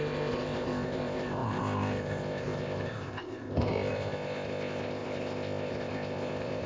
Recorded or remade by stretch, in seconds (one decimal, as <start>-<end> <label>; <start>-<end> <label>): 0.0-6.7 remade